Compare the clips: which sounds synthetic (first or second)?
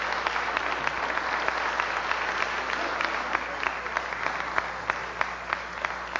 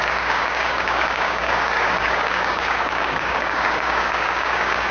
second